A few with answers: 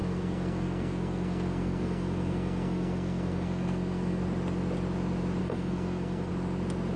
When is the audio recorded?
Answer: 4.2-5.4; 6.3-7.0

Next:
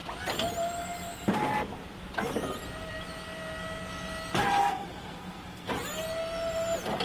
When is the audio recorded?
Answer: 0.0-4.6; 5.7-7.0

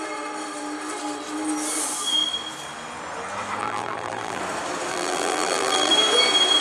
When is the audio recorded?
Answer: 0.0-3.6; 4.4-4.9; 5.9-6.6

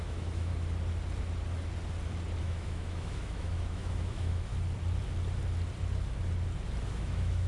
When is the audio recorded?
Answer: 0.5-2.4; 4.5-6.9